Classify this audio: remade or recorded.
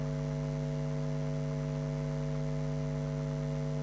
recorded